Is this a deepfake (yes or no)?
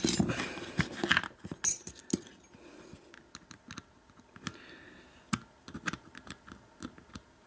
no